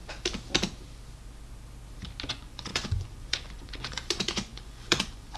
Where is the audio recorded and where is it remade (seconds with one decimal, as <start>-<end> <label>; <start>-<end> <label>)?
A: 0.0-2.3 recorded; 2.3-5.4 remade